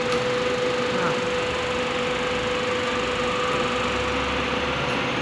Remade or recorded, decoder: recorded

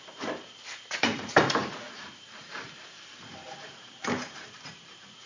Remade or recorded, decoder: remade, vocoder, BigVGAN v2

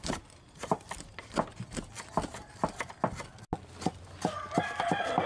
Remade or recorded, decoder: recorded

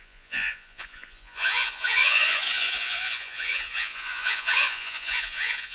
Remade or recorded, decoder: remade, vocoder, Vocos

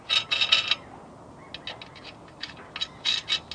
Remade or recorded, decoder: recorded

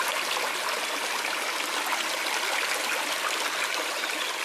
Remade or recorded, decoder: recorded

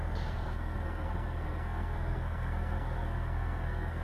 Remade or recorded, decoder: remade, codec, SNAC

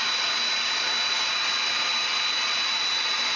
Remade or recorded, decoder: recorded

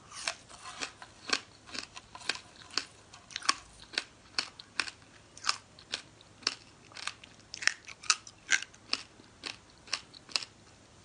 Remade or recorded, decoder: recorded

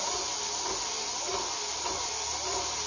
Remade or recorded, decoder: recorded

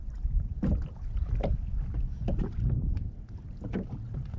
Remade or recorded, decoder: recorded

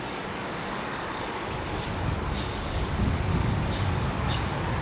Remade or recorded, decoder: remade, codec, DAC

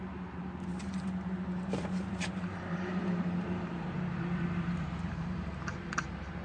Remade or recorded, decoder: remade, vocoder, BigVGAN v2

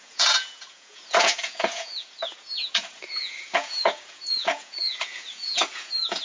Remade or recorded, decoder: remade, vocoder, Vocos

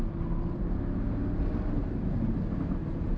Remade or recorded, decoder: recorded